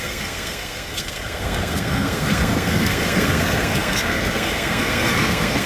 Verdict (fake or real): fake